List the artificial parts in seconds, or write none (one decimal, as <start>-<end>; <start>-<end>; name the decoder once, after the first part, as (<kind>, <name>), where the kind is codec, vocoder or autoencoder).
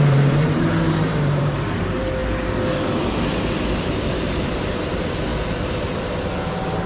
0.0-2.2 (vocoder, BigVGAN v2); 4.1-5.3; 6.5-6.9